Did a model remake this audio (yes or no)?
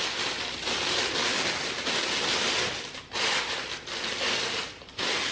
no